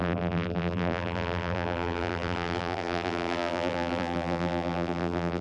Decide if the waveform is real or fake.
fake